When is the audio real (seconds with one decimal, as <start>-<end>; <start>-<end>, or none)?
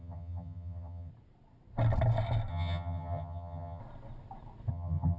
1.1-2.5; 3.8-4.7